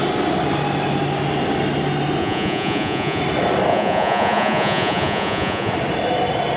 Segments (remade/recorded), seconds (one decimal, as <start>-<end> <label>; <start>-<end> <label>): 0.0-2.2 recorded; 2.2-3.2 remade; 3.2-3.7 recorded; 3.7-5.7 remade; 5.7-6.6 recorded